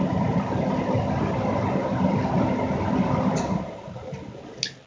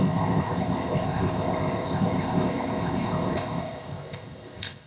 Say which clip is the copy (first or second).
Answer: second